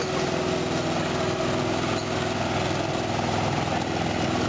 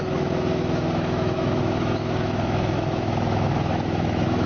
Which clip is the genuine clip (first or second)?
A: first